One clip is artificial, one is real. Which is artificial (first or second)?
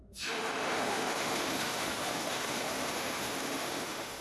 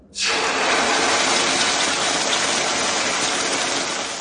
first